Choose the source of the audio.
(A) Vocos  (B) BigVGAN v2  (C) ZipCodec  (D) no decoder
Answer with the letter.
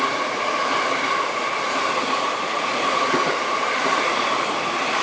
D